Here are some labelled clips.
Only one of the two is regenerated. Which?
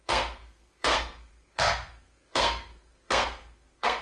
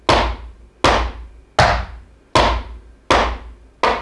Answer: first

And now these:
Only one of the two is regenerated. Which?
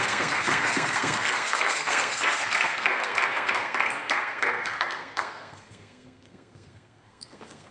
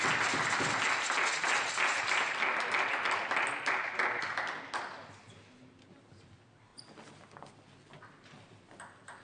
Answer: first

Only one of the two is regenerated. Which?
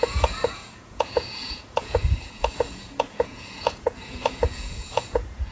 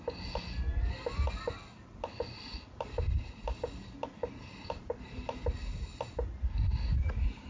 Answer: first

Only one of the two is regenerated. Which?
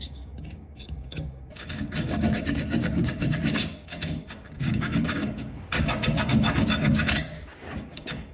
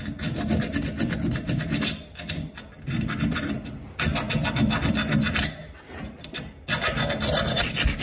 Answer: first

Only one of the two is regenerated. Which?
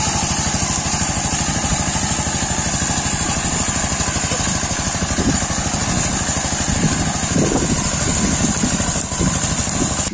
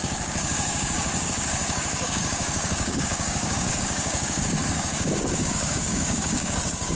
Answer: second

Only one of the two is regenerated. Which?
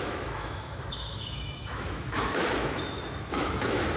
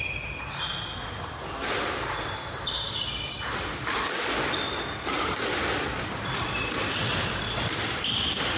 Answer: first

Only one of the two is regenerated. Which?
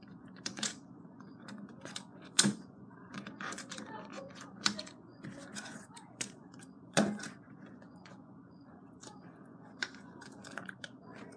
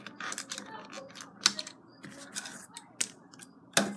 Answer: first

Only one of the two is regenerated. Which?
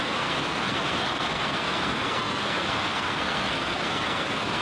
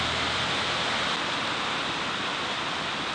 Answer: first